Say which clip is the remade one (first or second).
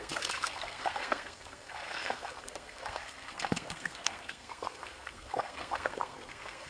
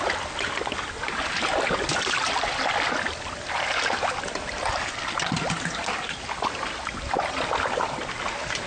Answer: first